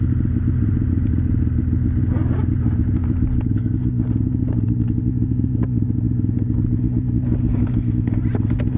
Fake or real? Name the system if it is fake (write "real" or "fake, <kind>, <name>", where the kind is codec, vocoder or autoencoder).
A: real